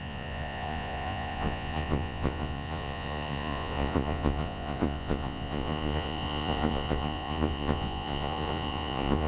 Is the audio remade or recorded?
remade